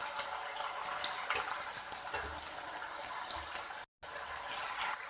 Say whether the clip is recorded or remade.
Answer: recorded